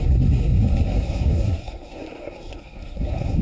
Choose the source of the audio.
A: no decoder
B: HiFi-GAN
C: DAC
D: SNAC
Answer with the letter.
D